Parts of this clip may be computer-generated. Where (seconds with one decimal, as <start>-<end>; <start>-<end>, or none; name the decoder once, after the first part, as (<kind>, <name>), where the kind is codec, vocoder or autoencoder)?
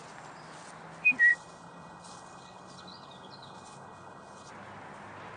1.3-4.5 (codec, HILCodec)